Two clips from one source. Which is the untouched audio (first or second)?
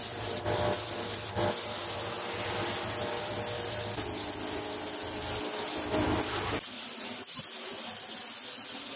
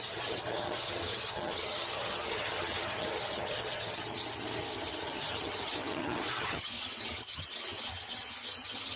first